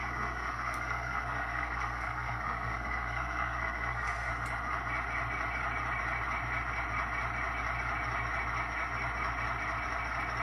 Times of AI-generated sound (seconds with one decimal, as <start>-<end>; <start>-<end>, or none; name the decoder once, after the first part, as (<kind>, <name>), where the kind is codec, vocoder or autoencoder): 0.0-4.3 (codec, SNAC)